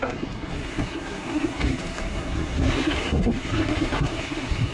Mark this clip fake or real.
fake